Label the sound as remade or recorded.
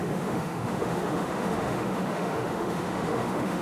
remade